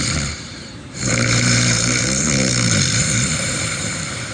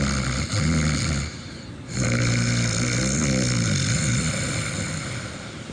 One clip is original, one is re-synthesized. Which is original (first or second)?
second